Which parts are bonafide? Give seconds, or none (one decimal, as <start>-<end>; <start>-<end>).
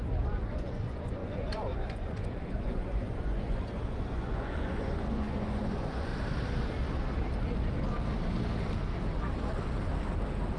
6.1-10.6